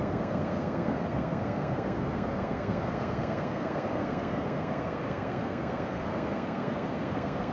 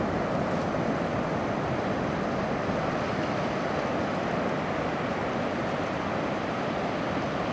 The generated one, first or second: first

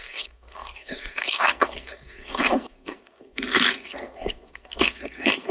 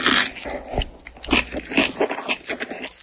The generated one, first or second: first